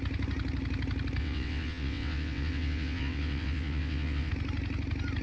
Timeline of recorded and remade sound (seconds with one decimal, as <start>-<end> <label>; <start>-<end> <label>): 0.0-1.2 recorded; 1.2-4.3 remade; 4.3-5.2 recorded